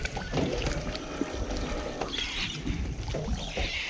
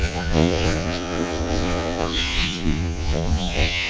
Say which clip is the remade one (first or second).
second